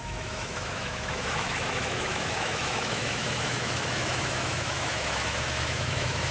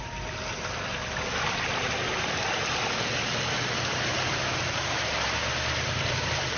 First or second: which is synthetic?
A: first